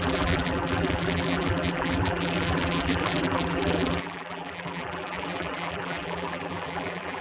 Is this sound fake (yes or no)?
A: yes